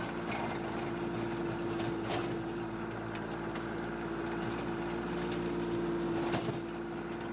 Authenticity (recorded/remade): recorded